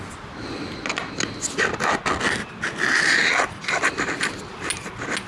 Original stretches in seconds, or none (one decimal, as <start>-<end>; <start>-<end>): 0.0-5.3